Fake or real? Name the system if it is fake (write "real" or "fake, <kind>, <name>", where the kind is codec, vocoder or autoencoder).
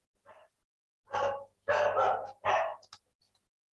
real